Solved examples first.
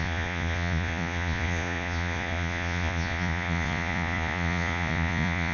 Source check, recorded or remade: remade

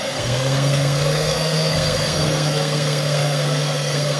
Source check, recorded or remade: remade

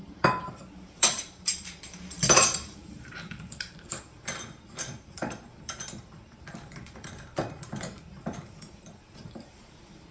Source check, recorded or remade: remade